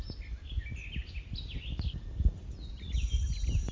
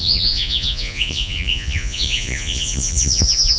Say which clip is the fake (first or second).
second